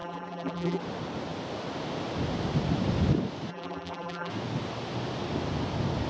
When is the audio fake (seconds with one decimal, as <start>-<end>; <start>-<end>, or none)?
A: 0.0-0.8; 3.5-4.3